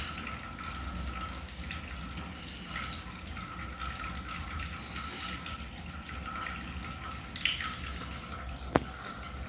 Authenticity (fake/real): real